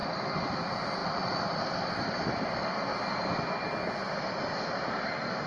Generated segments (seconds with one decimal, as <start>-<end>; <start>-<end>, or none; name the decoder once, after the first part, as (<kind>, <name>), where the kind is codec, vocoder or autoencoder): 0.6-2.9 (vocoder, BigVGAN v2); 4.7-5.5